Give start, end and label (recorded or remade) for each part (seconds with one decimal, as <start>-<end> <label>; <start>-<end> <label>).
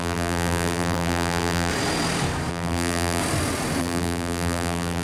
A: 0.0-1.7 remade; 1.7-2.5 recorded; 2.5-3.2 remade; 3.2-3.8 recorded; 3.8-5.0 remade